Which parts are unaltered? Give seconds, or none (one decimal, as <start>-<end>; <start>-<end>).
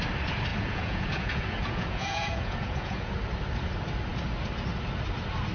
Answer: 0.0-0.5; 3.1-5.5